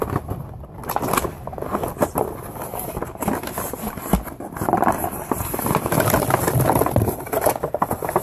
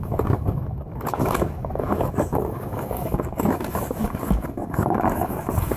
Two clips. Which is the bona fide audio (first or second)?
first